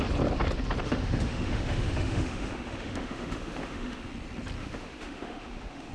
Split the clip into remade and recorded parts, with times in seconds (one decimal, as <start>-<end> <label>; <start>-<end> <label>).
0.0-0.8 recorded; 0.8-4.1 remade; 4.1-4.6 recorded; 4.6-5.9 remade